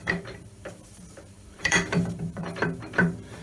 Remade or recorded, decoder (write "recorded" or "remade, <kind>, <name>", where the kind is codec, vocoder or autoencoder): remade, vocoder, BigVGAN v2